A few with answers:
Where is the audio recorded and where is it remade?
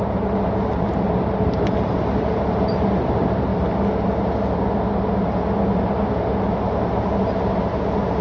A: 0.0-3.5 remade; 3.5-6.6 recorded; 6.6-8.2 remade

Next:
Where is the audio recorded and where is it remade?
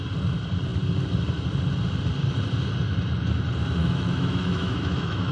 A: 0.0-3.8 recorded; 3.8-5.3 remade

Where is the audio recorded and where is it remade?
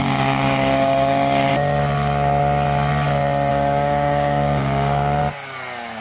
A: 0.0-1.5 remade; 1.5-3.5 recorded; 3.5-5.2 remade; 5.2-6.0 recorded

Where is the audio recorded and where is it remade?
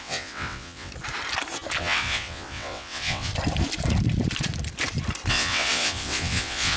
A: 0.0-0.9 remade; 0.9-1.8 recorded; 1.8-3.3 remade; 3.3-5.3 recorded; 5.3-6.8 remade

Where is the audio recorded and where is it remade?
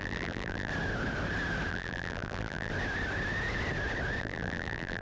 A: 0.0-0.7 remade; 0.7-1.7 recorded; 1.7-2.7 remade; 2.7-4.2 recorded; 4.2-5.0 remade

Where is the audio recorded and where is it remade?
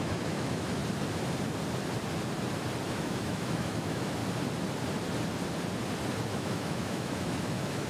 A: 0.0-0.8 remade; 0.8-2.9 recorded; 2.9-4.2 remade; 4.2-6.3 recorded; 6.3-7.9 remade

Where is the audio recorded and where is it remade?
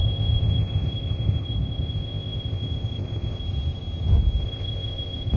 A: 0.0-3.4 remade; 3.4-4.4 recorded; 4.4-5.4 remade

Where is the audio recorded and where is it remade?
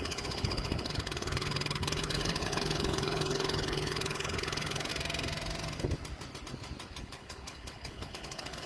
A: 0.0-4.9 remade; 4.9-7.0 recorded; 7.0-8.7 remade